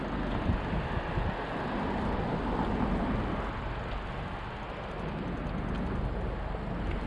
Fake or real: real